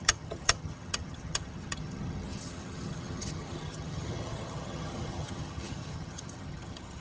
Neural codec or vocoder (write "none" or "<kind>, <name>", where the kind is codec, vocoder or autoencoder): vocoder, HiFi-GAN